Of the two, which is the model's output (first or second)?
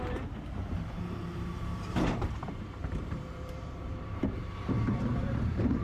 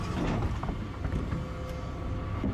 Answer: first